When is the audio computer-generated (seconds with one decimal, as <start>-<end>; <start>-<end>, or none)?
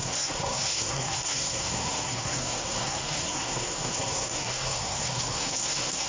0.0-6.1